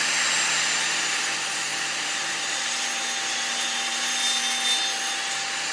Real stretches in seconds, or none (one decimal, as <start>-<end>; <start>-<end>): 0.0-5.7